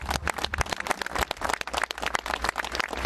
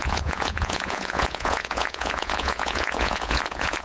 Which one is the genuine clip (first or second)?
first